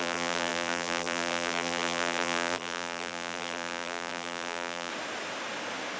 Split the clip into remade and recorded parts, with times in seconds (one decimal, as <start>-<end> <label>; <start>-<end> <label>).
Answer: 0.0-4.9 remade; 4.9-6.0 recorded